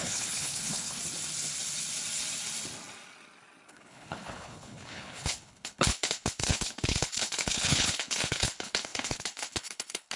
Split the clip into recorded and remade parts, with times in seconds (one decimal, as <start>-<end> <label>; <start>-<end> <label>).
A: 0.0-1.0 remade; 1.0-3.7 recorded; 3.7-10.2 remade